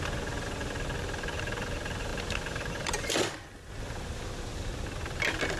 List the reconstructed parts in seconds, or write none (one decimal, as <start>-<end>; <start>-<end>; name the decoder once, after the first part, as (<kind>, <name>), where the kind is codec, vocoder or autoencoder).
none